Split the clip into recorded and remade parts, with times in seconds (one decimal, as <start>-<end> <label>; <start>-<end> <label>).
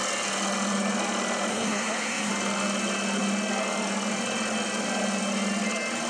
0.0-1.5 recorded; 1.5-2.3 remade; 2.3-6.1 recorded